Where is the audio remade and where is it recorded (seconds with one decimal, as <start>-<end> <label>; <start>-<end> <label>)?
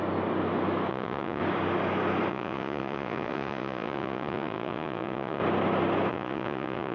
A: 0.0-0.9 recorded; 0.9-1.4 remade; 1.4-2.3 recorded; 2.3-5.4 remade; 5.4-6.1 recorded; 6.1-6.9 remade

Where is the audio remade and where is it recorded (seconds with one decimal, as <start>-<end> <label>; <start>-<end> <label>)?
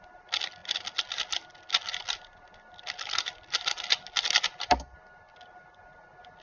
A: 0.0-6.4 recorded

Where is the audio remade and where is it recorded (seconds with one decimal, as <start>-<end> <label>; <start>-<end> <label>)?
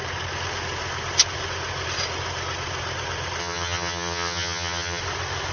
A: 0.0-3.4 recorded; 3.4-5.0 remade; 5.0-5.5 recorded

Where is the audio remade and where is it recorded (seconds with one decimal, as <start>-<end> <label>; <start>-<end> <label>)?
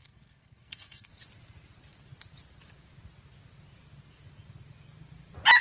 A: 0.0-1.1 remade; 1.1-5.6 recorded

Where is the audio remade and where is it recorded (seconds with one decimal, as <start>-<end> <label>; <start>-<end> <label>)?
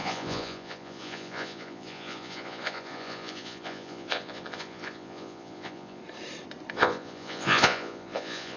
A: 0.0-6.0 remade; 6.0-6.7 recorded; 6.7-8.6 remade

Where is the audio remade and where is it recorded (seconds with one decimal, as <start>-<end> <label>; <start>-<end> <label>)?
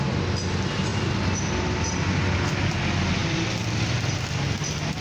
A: 0.0-5.0 recorded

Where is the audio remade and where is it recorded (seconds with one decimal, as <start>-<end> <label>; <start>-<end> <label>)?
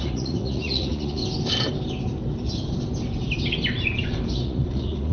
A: 0.0-1.2 remade; 1.2-4.3 recorded; 4.3-5.1 remade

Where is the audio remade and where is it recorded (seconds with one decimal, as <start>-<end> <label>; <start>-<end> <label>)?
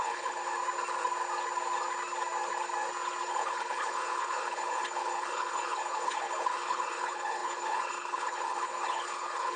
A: 0.0-0.4 remade; 0.4-3.3 recorded; 3.3-9.6 remade